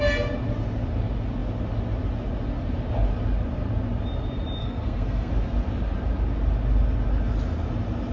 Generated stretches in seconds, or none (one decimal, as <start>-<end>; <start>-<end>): 4.6-5.3